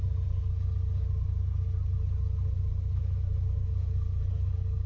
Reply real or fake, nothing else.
real